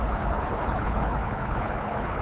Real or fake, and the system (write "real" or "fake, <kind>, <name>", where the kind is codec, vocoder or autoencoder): fake, codec, HILCodec